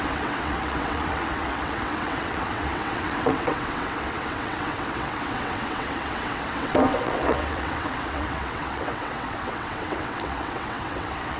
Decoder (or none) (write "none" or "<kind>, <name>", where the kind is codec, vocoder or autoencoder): vocoder, WaveNeXt